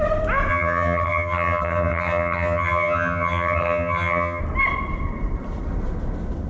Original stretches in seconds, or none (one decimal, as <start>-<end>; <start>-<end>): 0.0-0.5; 4.4-6.5